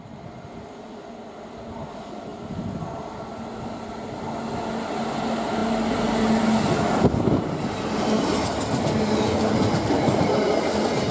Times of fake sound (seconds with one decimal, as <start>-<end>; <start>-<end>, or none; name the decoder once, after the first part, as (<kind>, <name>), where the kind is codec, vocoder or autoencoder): none